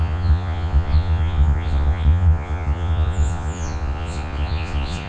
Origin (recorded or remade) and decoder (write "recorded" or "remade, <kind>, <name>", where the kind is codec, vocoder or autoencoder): remade, vocoder, Vocos